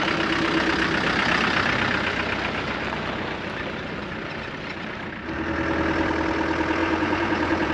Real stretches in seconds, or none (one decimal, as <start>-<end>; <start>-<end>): 0.0-6.8